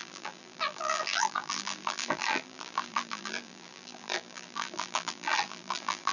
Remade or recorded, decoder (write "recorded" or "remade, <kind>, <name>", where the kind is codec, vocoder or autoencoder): remade, vocoder, BigVGAN v2